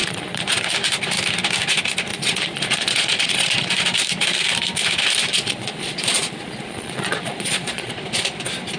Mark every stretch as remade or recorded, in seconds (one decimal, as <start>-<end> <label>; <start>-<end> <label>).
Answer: 0.0-0.6 remade; 0.6-2.1 recorded; 2.1-3.7 remade; 3.7-5.3 recorded; 5.3-7.9 remade; 7.9-8.8 recorded